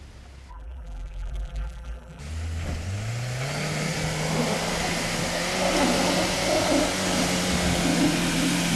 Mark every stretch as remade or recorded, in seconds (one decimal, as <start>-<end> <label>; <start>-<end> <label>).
0.0-0.5 recorded; 0.5-2.2 remade; 2.2-8.8 recorded